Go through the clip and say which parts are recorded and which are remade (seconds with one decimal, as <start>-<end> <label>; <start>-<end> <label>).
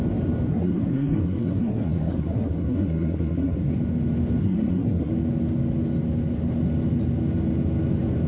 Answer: 0.0-0.5 recorded; 0.5-3.7 remade; 3.7-4.4 recorded; 4.4-5.1 remade; 5.1-8.3 recorded